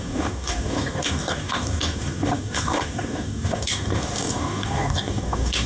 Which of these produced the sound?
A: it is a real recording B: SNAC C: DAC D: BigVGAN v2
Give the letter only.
C